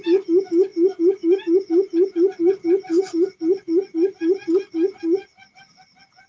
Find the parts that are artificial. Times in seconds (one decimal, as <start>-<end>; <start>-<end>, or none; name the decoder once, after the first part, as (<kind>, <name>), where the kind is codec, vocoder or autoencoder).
none

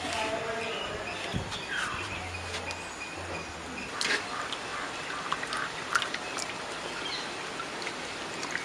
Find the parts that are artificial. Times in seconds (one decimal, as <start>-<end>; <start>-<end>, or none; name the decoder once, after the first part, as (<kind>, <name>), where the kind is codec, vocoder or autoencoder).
none

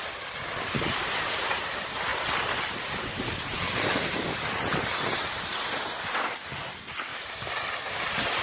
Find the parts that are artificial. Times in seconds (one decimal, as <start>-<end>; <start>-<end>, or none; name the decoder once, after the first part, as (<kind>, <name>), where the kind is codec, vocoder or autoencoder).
none

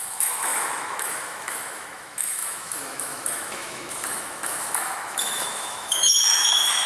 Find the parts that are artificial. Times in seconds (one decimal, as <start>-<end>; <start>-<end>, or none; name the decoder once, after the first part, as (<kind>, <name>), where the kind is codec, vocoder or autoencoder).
0.0-6.9 (autoencoder, DAC-VAE)

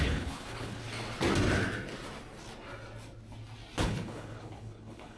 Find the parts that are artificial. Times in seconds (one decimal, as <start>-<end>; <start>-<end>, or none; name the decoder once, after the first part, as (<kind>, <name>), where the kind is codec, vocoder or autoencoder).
0.0-0.8 (codec, HILCodec); 3.8-5.2